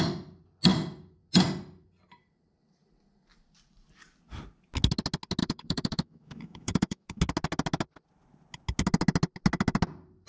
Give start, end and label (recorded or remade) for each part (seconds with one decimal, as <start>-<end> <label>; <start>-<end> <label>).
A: 0.0-5.4 recorded; 5.4-7.2 remade; 7.2-10.3 recorded